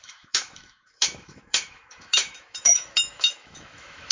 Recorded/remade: remade